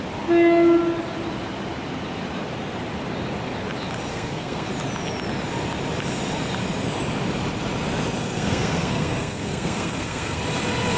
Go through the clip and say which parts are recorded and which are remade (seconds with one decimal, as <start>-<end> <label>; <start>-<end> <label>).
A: 0.0-4.1 recorded; 4.1-4.7 remade; 4.7-8.2 recorded; 8.2-10.4 remade; 10.4-11.0 recorded